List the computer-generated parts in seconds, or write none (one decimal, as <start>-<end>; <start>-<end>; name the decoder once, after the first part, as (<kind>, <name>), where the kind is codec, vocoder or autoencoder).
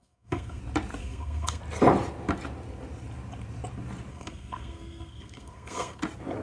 0.0-0.6 (codec, SNAC); 1.0-1.6; 4.1-6.0